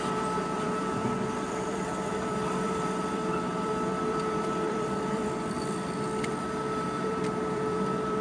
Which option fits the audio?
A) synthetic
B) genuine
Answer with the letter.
A